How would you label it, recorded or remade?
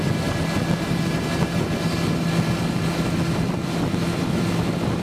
recorded